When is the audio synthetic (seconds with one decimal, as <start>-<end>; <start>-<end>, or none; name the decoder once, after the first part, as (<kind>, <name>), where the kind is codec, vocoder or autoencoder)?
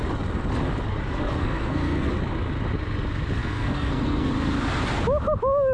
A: 1.4-2.1 (codec, SNAC); 3.4-4.3